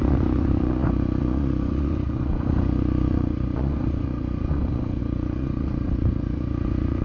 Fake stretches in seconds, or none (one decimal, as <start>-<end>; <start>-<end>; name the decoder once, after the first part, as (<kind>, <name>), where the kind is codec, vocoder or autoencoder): 0.0-7.0 (vocoder, Vocos)